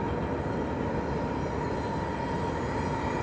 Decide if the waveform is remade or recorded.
recorded